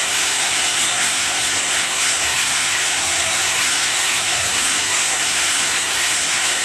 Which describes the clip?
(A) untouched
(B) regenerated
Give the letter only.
B